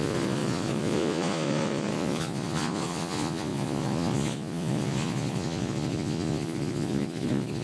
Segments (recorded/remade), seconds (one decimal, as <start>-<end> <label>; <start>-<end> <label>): 0.0-7.6 remade